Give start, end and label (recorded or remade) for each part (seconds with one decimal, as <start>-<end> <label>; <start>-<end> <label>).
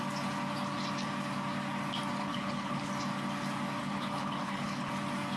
0.0-2.2 recorded; 2.2-2.9 remade; 2.9-3.8 recorded; 3.8-4.9 remade; 4.9-5.4 recorded